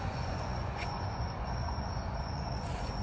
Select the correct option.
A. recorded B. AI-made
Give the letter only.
B